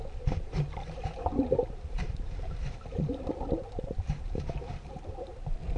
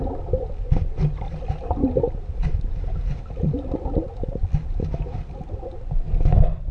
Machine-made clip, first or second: first